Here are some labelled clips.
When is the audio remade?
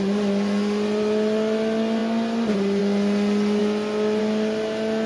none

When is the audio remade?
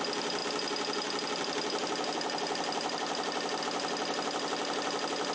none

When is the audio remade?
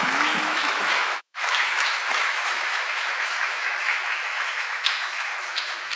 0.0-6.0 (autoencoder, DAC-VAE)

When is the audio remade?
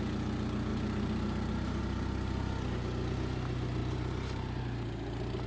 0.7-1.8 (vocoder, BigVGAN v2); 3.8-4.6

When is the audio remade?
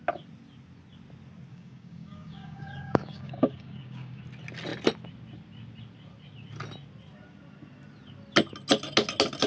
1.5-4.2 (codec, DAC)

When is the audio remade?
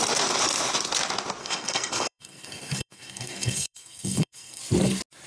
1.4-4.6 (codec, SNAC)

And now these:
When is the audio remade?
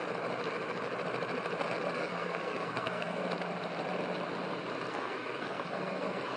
1.9-3.2 (codec, SNAC); 4.9-6.4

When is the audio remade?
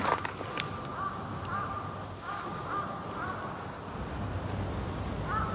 none